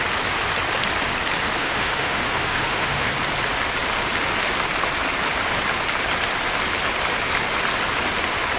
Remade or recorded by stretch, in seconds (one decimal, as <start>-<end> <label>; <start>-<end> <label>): 0.0-1.6 recorded; 1.6-3.1 remade; 3.1-8.6 recorded